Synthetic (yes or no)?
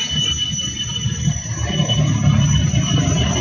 no